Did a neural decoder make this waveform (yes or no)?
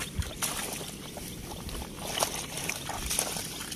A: no